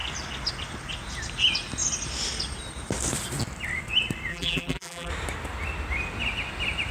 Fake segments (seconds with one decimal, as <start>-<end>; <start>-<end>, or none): 4.3-5.1